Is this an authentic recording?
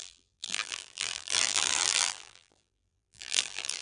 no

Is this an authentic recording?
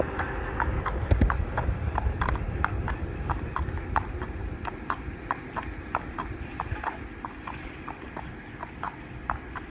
yes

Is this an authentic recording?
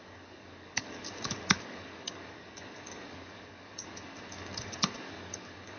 no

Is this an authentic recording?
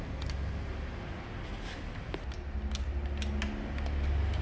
yes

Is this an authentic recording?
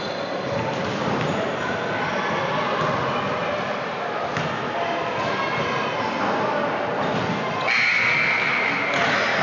yes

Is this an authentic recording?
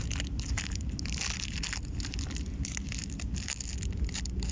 yes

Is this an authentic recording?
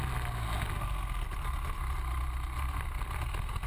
yes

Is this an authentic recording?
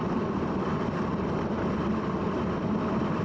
yes